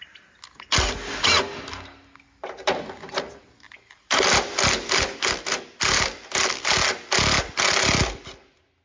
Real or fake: real